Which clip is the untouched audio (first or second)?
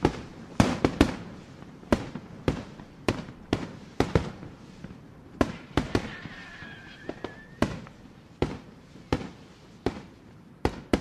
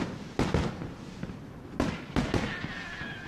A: second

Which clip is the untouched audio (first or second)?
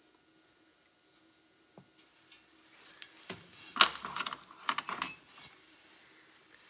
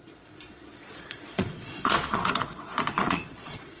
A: first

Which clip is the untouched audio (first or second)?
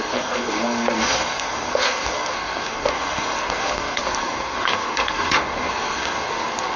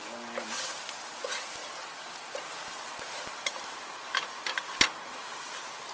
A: second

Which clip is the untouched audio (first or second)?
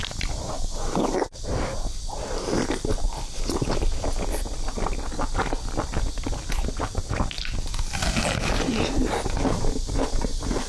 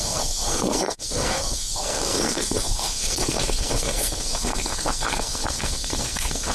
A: first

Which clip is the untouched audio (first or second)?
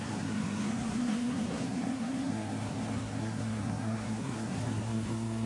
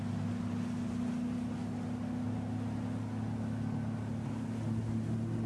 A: second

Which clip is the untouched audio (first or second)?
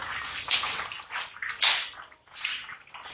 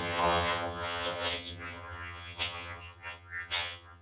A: first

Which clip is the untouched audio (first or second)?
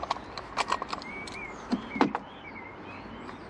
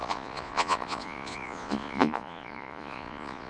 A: first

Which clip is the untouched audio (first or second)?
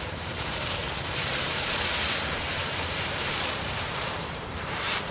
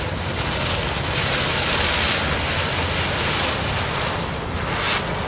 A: second